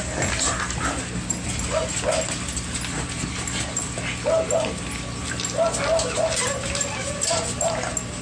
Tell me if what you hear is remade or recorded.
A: recorded